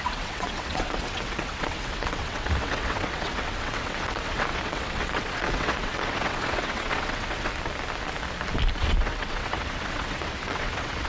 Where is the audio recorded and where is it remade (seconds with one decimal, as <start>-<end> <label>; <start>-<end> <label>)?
0.0-7.5 remade; 7.5-8.8 recorded; 8.8-11.1 remade